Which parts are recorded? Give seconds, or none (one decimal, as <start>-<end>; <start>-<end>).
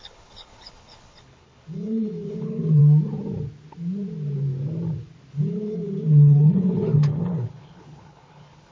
2.8-5.3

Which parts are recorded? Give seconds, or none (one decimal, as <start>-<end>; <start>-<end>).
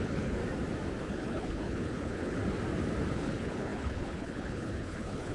0.4-1.0; 2.4-3.1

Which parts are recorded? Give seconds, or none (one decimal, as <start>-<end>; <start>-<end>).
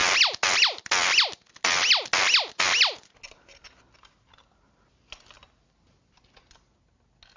0.0-7.4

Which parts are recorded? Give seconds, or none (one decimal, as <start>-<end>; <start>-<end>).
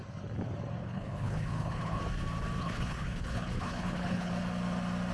0.0-0.8; 2.0-2.6; 4.3-5.1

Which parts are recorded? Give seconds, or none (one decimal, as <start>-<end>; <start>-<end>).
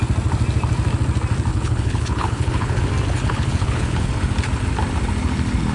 0.0-1.5; 2.8-3.2; 4.1-5.7